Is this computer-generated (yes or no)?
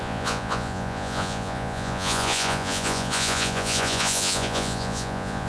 yes